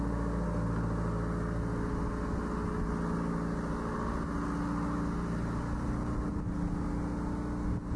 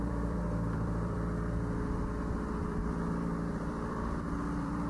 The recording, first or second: first